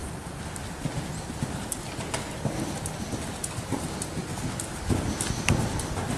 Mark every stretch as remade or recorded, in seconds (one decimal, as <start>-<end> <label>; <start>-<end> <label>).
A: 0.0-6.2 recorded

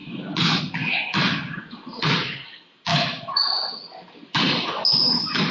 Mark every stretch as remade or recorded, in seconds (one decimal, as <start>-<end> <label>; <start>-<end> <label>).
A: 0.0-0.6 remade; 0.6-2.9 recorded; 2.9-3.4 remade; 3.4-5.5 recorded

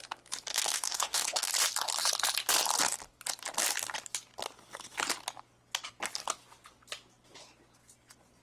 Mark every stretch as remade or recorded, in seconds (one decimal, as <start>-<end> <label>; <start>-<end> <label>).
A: 0.0-0.5 recorded; 0.5-1.5 remade; 1.5-8.4 recorded

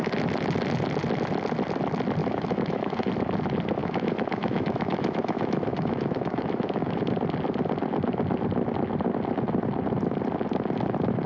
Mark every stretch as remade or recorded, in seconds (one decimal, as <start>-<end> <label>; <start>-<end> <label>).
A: 0.0-2.2 recorded; 2.2-3.1 remade; 3.1-3.8 recorded; 3.8-7.1 remade; 7.1-11.3 recorded

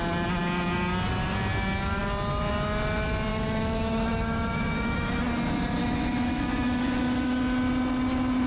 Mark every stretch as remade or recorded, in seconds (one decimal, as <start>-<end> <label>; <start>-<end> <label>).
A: 0.0-3.3 recorded; 3.3-5.2 remade; 5.2-5.8 recorded; 5.8-7.4 remade; 7.4-8.5 recorded

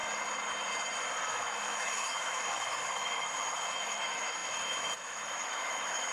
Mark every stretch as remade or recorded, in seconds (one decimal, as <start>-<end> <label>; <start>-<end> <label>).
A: 0.0-1.3 recorded; 1.3-6.1 remade